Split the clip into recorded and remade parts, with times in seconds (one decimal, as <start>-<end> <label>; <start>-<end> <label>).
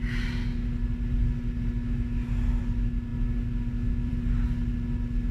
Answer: 0.0-5.3 recorded